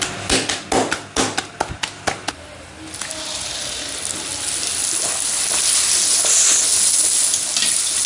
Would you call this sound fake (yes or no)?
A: no